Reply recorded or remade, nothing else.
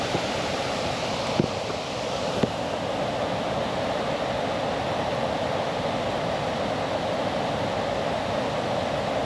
recorded